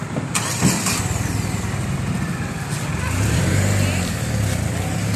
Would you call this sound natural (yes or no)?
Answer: yes